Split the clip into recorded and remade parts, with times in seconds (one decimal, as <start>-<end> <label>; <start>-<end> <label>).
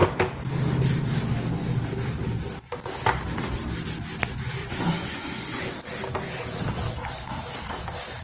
0.0-4.6 recorded; 4.6-5.7 remade; 5.7-8.2 recorded